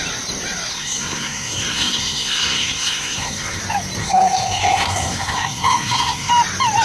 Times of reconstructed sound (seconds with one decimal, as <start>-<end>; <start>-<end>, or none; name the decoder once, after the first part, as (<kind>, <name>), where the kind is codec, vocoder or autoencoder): 0.7-3.6 (codec, SNAC); 4.0-6.3